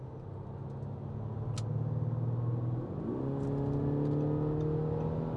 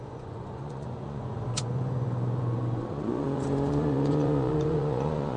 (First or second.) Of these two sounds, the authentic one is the first